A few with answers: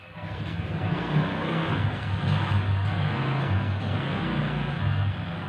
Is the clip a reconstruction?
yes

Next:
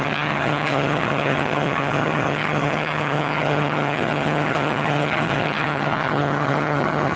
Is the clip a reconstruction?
yes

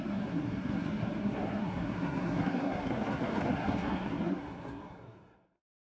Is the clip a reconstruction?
yes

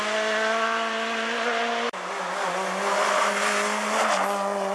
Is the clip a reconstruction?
no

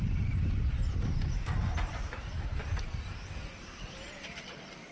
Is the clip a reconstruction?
yes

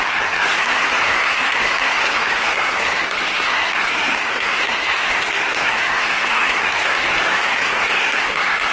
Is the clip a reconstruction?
yes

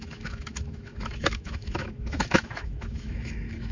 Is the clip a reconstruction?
yes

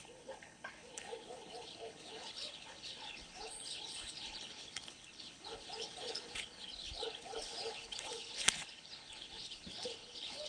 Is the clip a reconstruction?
yes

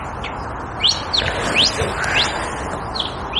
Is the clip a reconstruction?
no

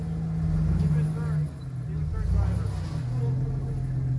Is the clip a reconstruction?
no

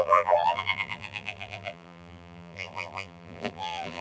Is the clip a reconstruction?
yes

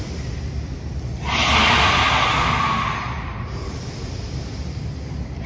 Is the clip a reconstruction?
no